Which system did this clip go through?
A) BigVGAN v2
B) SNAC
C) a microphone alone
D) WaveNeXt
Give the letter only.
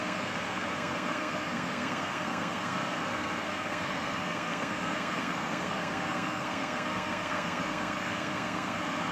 B